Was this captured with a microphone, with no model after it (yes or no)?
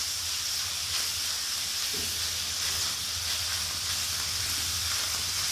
yes